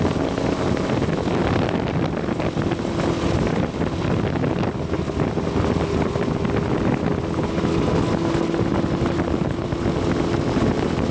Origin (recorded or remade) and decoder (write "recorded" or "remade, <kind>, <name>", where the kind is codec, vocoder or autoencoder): recorded